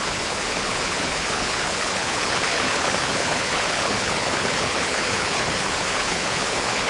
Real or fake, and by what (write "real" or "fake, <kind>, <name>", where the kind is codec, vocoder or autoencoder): fake, codec, HILCodec